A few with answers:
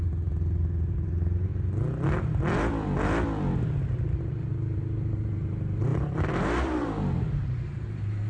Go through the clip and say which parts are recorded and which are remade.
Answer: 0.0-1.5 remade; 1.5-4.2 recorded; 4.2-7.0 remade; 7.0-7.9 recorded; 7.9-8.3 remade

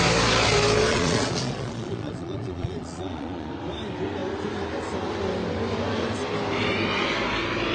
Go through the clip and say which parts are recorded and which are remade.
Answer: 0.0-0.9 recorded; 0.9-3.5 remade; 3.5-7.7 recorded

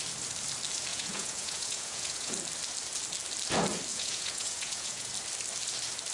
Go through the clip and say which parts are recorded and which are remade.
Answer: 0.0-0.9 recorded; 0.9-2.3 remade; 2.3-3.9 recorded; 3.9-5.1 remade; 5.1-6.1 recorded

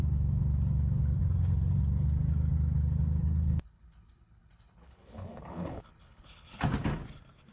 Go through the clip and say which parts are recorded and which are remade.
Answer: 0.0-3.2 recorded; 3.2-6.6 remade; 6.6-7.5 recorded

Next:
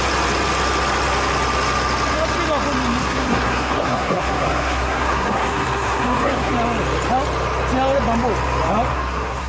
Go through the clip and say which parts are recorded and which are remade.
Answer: 0.0-3.0 recorded; 3.0-6.5 remade; 6.5-8.9 recorded; 8.9-9.5 remade

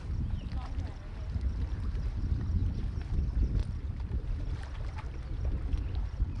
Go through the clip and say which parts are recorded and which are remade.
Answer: 0.0-3.6 recorded; 3.6-4.9 remade; 4.9-6.4 recorded

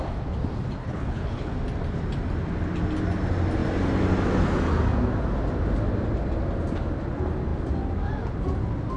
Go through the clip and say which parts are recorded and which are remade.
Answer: 0.0-0.8 recorded; 0.8-1.5 remade; 1.5-9.0 recorded